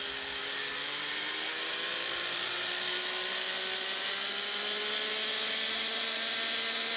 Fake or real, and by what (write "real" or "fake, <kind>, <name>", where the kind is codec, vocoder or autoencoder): real